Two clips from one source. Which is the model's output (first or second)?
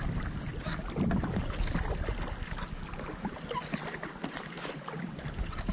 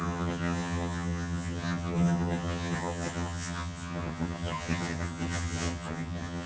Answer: second